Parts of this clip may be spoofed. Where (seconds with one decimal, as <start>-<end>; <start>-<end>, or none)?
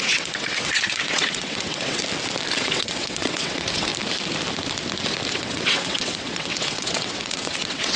0.0-2.0; 2.6-3.9; 5.3-8.0